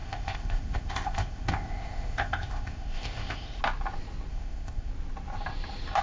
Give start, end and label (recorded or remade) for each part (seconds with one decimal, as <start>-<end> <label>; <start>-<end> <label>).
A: 0.0-3.6 remade; 3.6-4.3 recorded; 4.3-4.9 remade; 4.9-6.0 recorded